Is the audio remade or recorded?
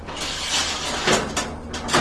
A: recorded